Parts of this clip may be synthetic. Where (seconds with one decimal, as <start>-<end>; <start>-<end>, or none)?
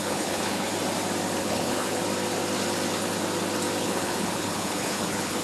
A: 0.0-0.7; 1.4-2.0; 3.8-5.4